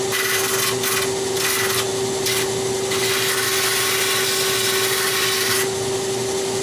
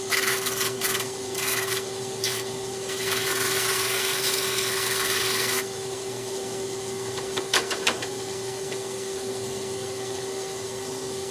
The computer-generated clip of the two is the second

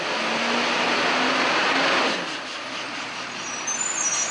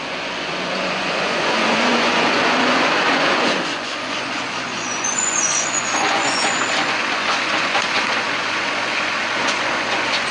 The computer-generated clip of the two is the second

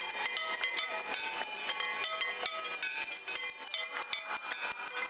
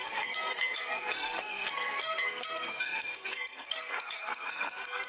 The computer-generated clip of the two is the second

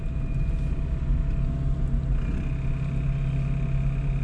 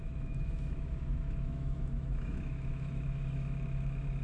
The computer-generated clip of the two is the second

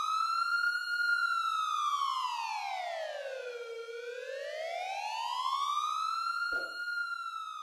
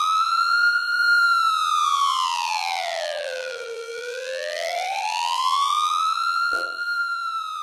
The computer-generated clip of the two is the second